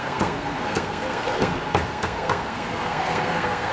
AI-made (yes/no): yes